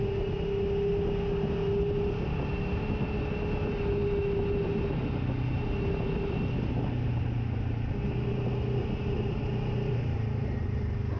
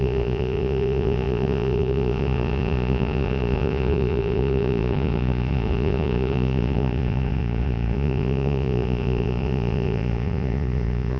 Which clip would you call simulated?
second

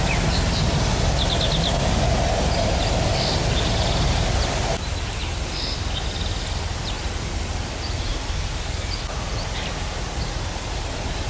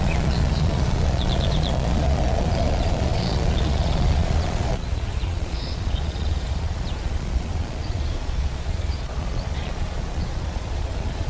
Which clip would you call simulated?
second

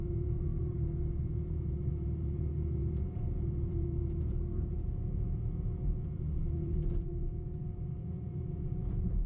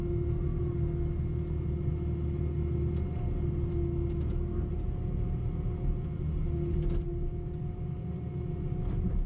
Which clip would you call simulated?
first